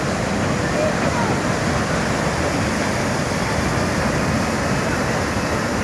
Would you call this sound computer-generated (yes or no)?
no